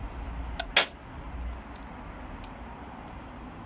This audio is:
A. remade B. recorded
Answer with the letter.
B